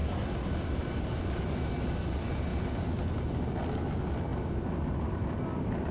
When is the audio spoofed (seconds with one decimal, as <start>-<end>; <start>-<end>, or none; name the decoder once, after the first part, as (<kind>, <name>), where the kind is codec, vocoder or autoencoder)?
2.5-3.1 (vocoder, BigVGAN v2)